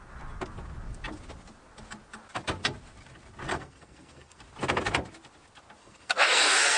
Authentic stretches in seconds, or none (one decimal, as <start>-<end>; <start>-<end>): 0.0-3.5; 4.4-5.8